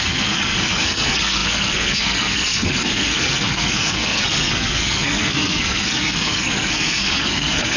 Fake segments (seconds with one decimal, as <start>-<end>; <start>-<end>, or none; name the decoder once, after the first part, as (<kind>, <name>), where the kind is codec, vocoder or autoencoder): 0.0-7.8 (codec, SNAC)

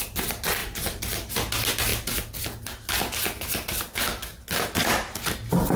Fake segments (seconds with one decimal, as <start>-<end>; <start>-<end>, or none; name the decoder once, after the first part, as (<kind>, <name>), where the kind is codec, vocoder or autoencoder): 0.6-1.3 (vocoder, BigVGAN v2)

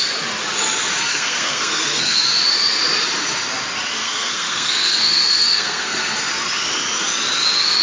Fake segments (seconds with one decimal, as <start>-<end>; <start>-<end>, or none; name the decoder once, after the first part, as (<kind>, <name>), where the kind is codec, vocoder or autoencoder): 1.1-2.2 (codec, SNAC); 4.0-6.3

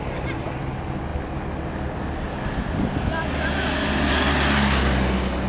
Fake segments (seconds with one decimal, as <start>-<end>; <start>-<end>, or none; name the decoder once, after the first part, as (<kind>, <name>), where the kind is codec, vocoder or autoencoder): none

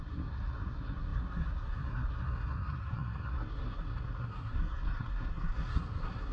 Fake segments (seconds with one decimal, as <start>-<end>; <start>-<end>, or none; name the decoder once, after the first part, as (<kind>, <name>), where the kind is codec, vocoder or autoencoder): 0.0-6.3 (codec, SNAC)

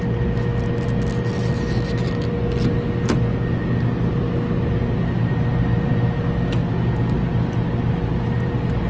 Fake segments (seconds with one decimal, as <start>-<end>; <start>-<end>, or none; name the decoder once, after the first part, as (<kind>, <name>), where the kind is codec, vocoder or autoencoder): none

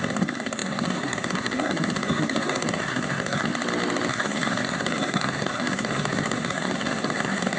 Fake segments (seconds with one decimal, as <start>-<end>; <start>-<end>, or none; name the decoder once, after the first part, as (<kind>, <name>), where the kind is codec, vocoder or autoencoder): 0.0-3.5 (codec, SNAC); 4.1-7.6